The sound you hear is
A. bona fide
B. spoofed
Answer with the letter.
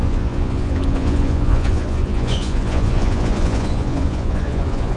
B